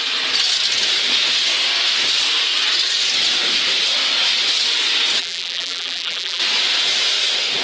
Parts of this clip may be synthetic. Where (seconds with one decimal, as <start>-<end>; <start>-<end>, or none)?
5.2-6.4